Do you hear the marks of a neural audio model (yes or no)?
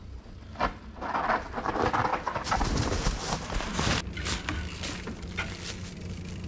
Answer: no